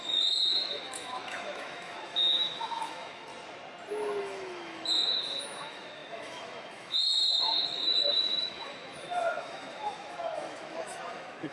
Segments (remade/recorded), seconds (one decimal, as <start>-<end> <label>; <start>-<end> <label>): 0.0-3.3 remade; 3.3-4.2 recorded; 4.2-11.5 remade